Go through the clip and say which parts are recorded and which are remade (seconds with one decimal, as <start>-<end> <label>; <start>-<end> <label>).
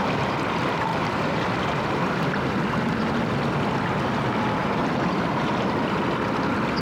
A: 0.0-0.9 recorded; 0.9-1.4 remade; 1.4-4.6 recorded; 4.6-5.5 remade; 5.5-6.8 recorded